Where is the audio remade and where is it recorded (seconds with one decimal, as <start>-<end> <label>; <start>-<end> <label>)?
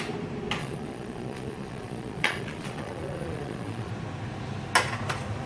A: 0.0-0.6 recorded; 0.6-3.9 remade; 3.9-5.5 recorded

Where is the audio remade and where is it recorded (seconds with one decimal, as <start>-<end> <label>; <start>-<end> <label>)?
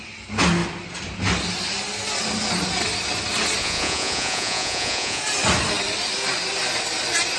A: 0.0-3.6 recorded; 3.6-5.2 remade; 5.2-7.4 recorded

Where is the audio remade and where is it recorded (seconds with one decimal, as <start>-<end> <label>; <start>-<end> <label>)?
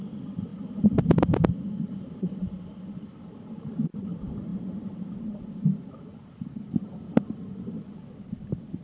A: 0.0-8.8 remade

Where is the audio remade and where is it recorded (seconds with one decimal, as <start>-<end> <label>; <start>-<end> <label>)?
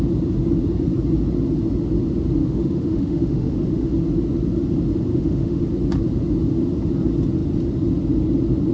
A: 0.0-2.4 recorded; 2.4-3.9 remade; 3.9-5.1 recorded; 5.1-5.6 remade; 5.6-8.7 recorded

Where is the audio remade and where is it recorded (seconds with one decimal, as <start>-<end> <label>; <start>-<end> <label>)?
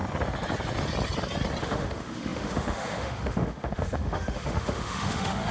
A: 0.0-1.6 recorded; 1.6-5.5 remade